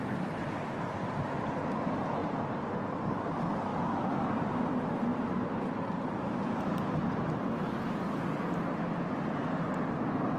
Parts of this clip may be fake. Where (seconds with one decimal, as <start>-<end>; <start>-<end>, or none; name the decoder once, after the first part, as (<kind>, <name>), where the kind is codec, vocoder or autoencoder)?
2.2-2.9 (vocoder, BigVGAN v2); 5.1-7.0